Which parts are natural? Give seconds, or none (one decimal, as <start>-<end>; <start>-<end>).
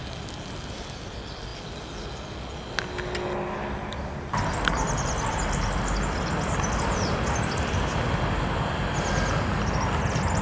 0.0-10.4